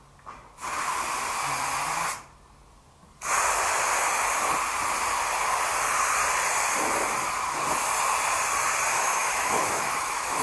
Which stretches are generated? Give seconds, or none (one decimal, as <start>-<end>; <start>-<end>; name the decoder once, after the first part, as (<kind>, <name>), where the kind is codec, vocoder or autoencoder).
8.9-10.4 (autoencoder, DAC-VAE)